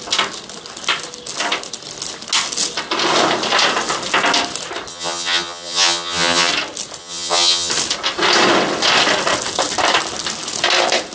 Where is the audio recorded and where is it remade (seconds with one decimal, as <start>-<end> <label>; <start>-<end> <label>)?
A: 0.0-4.9 recorded; 4.9-6.5 remade; 6.5-7.0 recorded; 7.0-7.7 remade; 7.7-11.1 recorded